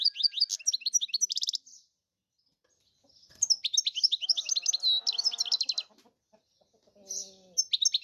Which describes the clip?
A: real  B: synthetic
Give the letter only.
A